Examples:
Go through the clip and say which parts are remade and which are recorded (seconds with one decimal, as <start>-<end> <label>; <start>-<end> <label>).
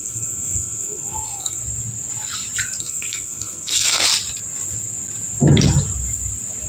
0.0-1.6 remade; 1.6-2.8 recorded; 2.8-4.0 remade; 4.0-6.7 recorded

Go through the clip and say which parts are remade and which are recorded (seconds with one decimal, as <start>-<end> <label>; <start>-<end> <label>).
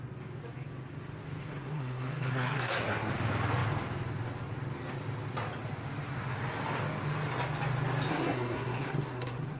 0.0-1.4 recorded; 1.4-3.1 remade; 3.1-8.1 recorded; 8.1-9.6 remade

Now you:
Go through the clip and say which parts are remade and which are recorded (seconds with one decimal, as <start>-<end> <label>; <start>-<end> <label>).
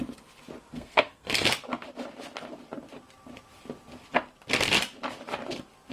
0.0-0.7 recorded; 0.7-1.5 remade; 1.5-5.9 recorded